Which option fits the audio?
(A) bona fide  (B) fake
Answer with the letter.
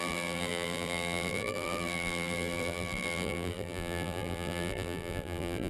B